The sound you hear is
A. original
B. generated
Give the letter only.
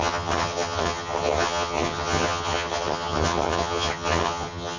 B